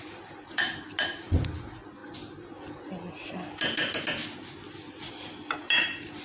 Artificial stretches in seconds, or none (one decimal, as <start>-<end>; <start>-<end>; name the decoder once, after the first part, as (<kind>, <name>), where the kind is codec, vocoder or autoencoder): none